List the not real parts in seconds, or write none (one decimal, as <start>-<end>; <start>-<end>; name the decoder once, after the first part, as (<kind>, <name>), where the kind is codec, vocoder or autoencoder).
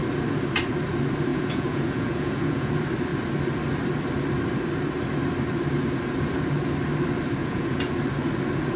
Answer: 1.3-2.7 (vocoder, Vocos); 7.4-7.9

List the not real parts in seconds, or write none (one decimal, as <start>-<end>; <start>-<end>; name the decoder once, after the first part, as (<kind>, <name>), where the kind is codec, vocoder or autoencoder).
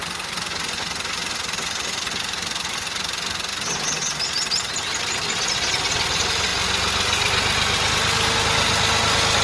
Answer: none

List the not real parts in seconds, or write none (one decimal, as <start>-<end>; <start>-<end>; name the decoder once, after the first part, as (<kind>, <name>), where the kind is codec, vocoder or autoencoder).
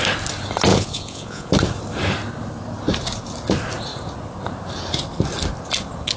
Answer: 0.7-1.5 (vocoder, Vocos)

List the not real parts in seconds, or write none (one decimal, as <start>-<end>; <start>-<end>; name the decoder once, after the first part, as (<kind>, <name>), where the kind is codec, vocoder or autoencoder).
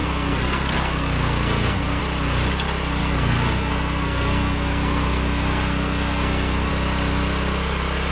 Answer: 0.0-2.0 (codec, SNAC); 3.0-6.7